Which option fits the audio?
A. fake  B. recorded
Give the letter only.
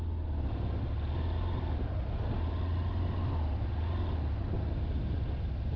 B